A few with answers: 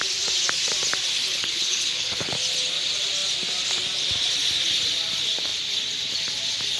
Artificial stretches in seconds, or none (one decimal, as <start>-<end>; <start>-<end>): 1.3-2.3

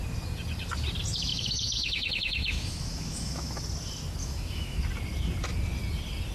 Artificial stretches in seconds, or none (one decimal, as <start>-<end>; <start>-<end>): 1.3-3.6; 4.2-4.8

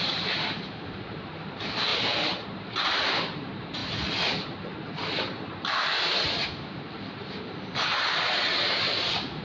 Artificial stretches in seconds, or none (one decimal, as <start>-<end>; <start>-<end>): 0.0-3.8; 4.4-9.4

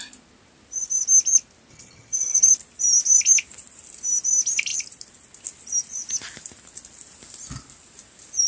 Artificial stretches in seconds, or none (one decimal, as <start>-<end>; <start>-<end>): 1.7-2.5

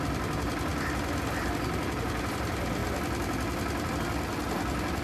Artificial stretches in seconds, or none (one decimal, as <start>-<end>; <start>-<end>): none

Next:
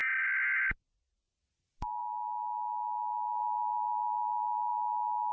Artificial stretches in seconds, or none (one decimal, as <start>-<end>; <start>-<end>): none

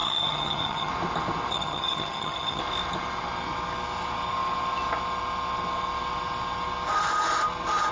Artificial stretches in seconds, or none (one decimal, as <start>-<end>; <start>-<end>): 0.0-0.9; 1.5-2.6